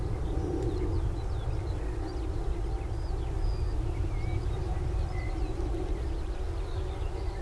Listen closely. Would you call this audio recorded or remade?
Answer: recorded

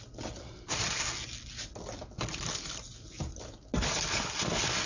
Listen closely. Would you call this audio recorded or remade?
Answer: recorded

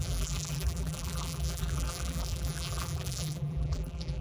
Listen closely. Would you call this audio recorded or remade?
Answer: remade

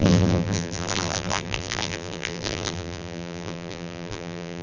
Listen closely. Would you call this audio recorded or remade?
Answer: remade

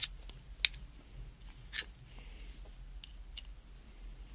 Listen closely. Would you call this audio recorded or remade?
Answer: recorded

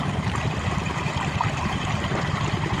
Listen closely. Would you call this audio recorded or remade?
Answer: recorded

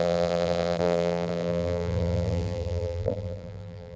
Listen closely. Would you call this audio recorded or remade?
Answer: remade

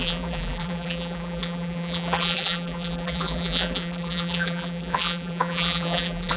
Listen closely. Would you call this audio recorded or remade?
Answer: remade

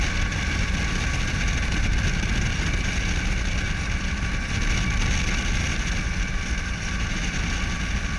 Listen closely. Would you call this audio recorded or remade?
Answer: recorded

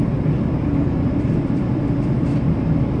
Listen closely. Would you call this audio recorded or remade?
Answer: remade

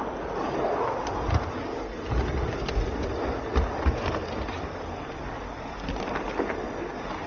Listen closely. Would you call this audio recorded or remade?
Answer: recorded